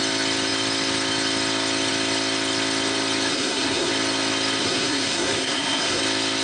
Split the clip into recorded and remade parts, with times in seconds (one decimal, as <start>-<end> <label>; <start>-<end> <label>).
0.0-3.3 recorded; 3.3-3.9 remade; 3.9-4.6 recorded; 4.6-6.0 remade; 6.0-6.4 recorded